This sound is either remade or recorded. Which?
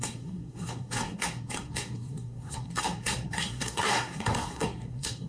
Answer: remade